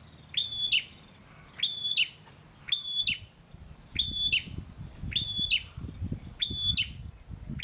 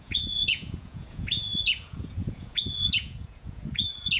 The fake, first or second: second